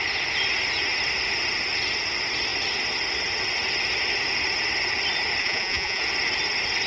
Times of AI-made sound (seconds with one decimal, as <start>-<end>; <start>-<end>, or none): 5.4-6.0